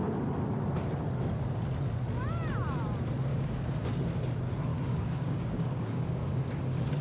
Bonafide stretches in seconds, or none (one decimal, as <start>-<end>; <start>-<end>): 0.0-3.3; 3.9-4.7; 6.3-7.0

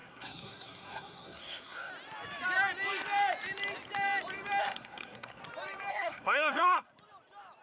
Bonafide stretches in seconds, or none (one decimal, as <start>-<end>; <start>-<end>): 1.9-4.6; 5.4-5.9; 6.9-7.6

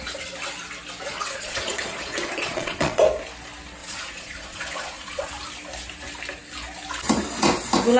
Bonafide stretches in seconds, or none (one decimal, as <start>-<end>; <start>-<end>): 0.0-1.1; 3.0-3.8; 5.3-8.0

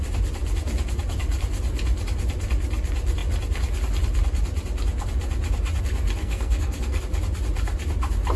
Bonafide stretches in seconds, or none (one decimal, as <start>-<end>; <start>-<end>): 0.0-6.2; 7.0-8.4